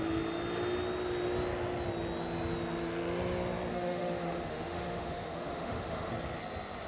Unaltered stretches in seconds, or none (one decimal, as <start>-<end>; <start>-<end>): 0.0-3.7; 6.1-6.9